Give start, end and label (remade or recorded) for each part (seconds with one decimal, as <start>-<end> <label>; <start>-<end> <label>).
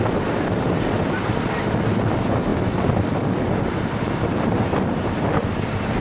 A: 0.0-6.0 recorded